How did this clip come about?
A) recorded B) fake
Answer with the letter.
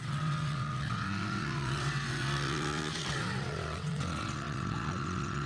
B